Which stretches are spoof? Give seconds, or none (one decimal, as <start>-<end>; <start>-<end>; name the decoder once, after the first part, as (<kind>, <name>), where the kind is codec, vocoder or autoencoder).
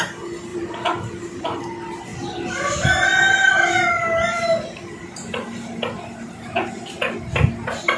0.5-1.6 (vocoder, BigVGAN v2)